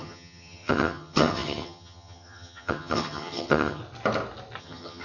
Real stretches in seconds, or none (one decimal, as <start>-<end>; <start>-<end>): 3.8-4.6